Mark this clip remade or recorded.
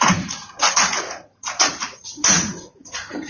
remade